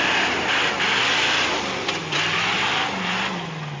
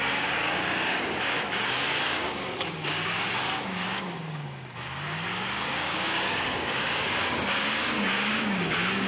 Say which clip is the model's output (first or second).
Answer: second